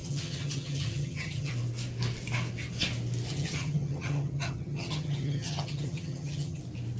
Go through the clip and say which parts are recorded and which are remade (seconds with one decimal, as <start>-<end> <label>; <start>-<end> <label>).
0.0-1.5 remade; 1.5-3.3 recorded; 3.3-6.6 remade; 6.6-7.0 recorded